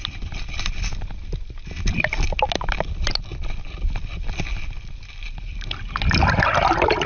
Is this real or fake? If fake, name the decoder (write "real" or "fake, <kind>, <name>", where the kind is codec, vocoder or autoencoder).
real